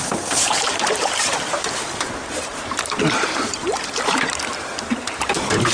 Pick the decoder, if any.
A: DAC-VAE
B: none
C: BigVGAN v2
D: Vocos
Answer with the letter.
C